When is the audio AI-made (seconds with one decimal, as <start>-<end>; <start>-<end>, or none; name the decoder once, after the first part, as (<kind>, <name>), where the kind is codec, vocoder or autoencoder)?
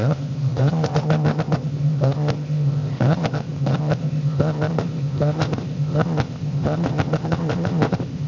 0.0-8.3 (codec, ZipCodec)